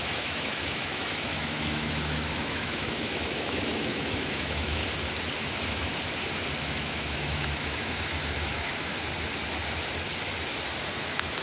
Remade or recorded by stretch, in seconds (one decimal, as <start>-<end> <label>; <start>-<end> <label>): 0.0-4.8 remade; 4.8-5.4 recorded; 5.4-5.9 remade; 5.9-6.6 recorded; 6.6-8.9 remade; 8.9-10.9 recorded; 10.9-11.4 remade